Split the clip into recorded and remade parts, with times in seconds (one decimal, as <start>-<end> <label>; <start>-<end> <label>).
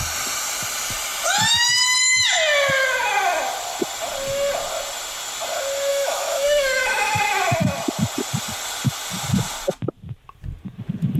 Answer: 0.0-5.9 recorded; 5.9-7.2 remade; 7.2-11.2 recorded